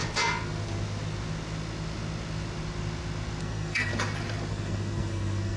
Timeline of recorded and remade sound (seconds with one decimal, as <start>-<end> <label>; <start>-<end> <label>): 0.0-3.4 recorded; 3.4-3.9 remade; 3.9-4.5 recorded; 4.5-5.6 remade